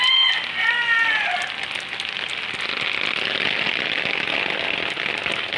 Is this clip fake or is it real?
real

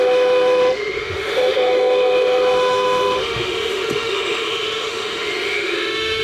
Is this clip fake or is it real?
fake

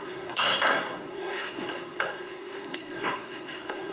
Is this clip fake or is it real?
fake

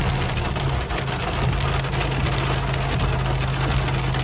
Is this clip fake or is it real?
real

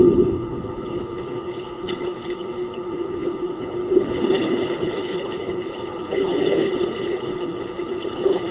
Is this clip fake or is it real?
fake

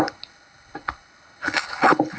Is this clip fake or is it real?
fake